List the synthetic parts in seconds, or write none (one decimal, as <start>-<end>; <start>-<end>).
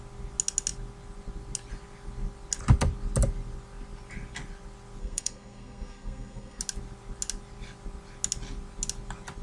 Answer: 5.0-6.6